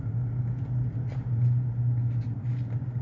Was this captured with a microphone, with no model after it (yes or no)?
yes